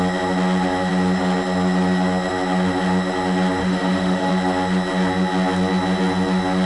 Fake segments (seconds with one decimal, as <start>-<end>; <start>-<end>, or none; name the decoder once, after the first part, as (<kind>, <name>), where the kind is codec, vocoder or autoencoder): 3.6-4.3 (autoencoder, DAC-VAE)